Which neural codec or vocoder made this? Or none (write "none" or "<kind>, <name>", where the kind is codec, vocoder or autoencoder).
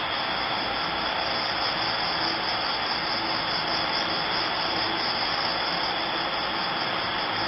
none